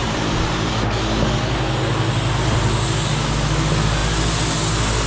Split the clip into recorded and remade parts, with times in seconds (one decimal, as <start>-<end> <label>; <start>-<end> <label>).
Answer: 0.0-0.7 remade; 0.7-5.1 recorded